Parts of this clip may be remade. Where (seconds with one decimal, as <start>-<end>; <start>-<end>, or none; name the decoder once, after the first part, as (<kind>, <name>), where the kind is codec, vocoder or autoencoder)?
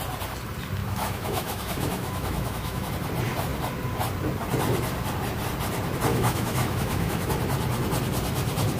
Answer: 0.8-2.9 (autoencoder, DAC-VAE); 6.1-7.3